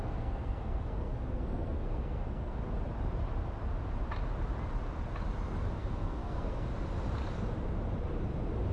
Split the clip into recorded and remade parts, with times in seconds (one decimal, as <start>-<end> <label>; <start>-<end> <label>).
0.0-2.6 remade; 2.6-5.8 recorded; 5.8-6.7 remade; 6.7-8.7 recorded